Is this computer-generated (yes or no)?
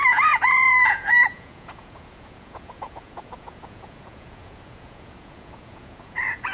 yes